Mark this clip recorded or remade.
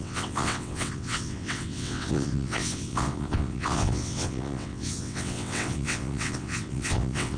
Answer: remade